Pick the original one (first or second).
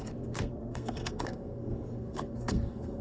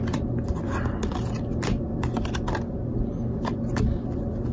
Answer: second